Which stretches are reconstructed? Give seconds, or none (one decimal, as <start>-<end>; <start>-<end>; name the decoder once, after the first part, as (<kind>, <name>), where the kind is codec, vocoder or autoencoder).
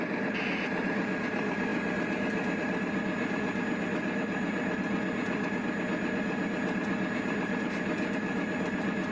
none